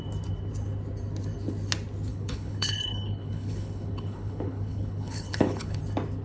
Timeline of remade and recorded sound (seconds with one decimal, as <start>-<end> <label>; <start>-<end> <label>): 0.0-2.1 recorded; 2.1-5.8 remade; 5.8-6.2 recorded